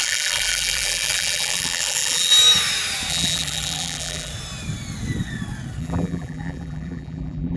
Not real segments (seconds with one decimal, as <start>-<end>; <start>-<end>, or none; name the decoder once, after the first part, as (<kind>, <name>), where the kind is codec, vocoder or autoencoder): 0.0-2.3 (vocoder, BigVGAN v2); 3.1-4.3; 5.8-7.6